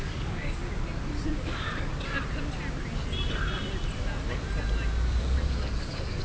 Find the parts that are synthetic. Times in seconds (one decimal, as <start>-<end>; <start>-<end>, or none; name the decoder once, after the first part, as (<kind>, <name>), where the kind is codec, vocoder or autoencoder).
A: 0.0-0.6 (codec, DAC); 1.3-1.9; 5.2-6.2